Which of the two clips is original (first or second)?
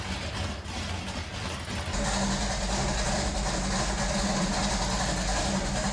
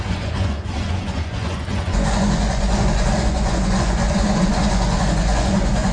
first